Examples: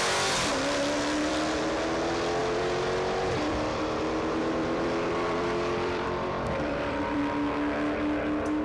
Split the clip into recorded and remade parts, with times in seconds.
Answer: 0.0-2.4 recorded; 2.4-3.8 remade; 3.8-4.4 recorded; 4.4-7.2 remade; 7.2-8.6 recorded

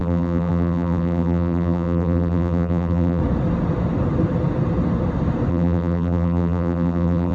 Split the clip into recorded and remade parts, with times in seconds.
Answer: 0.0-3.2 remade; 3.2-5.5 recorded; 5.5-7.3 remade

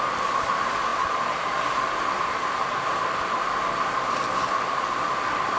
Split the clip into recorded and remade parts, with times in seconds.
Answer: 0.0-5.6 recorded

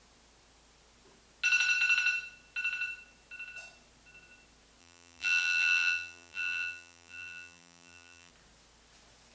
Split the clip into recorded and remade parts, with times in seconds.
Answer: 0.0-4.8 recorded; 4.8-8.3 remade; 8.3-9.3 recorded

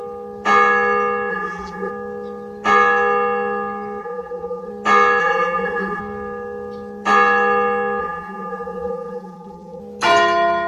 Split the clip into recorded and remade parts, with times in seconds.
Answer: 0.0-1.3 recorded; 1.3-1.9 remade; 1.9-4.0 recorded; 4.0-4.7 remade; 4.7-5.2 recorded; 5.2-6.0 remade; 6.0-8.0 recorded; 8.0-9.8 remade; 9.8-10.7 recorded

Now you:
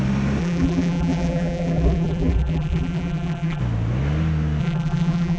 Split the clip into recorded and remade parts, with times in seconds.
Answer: 0.0-0.4 recorded; 0.4-3.6 remade; 3.6-4.6 recorded; 4.6-5.4 remade

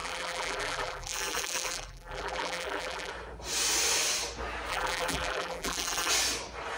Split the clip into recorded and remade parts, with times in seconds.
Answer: 0.0-3.1 remade; 3.1-4.7 recorded; 4.7-6.1 remade; 6.1-6.8 recorded

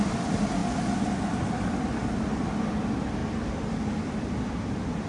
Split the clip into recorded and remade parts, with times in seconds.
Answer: 0.0-3.2 recorded; 3.2-4.6 remade; 4.6-5.1 recorded